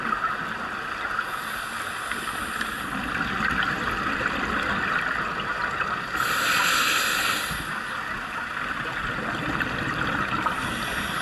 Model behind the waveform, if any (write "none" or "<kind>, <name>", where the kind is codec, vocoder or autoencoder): none